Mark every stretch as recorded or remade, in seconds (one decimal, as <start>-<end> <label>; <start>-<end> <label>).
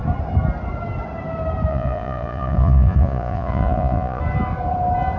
0.0-1.7 recorded; 1.7-4.2 remade; 4.2-5.2 recorded